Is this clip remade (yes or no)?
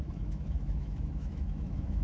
yes